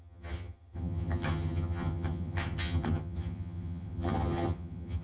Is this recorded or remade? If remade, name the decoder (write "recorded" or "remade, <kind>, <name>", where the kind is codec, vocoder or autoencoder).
remade, vocoder, HiFi-GAN